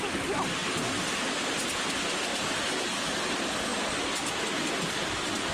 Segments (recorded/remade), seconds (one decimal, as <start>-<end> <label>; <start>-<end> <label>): 0.0-5.5 recorded